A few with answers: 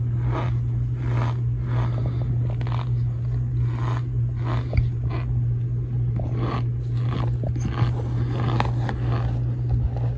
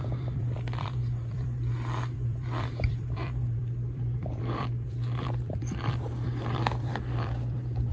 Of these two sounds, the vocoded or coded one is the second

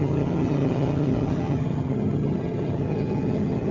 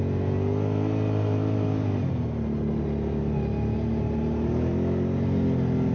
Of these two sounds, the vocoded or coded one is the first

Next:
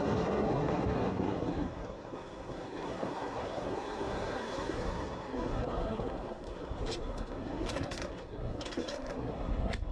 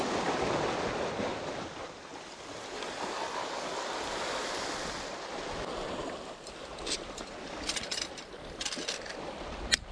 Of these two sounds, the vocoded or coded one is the first